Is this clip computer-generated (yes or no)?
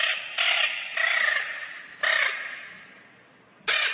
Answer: no